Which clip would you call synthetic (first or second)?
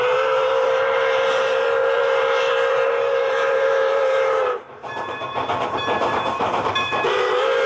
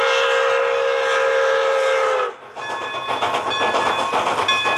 first